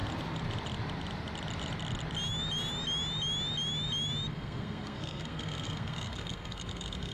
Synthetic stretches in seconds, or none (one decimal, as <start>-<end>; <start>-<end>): 4.3-7.1